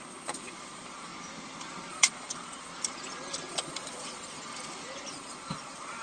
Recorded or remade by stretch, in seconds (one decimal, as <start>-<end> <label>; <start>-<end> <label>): 0.0-1.1 remade; 1.1-1.9 recorded; 1.9-2.7 remade; 2.7-3.5 recorded; 3.5-4.5 remade; 4.5-5.1 recorded; 5.1-6.0 remade